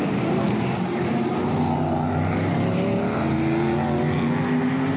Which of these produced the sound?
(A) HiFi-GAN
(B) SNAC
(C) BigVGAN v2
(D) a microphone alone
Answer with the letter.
D